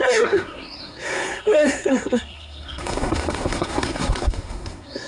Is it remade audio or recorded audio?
remade